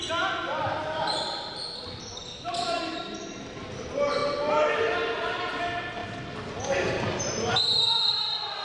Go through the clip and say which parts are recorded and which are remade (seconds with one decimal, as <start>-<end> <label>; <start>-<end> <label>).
0.0-8.6 recorded